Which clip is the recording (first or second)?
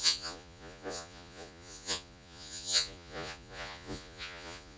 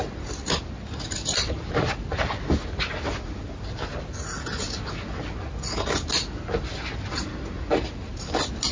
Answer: second